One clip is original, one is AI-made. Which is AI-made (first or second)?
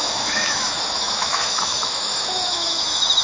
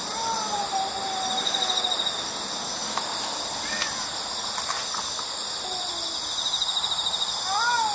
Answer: first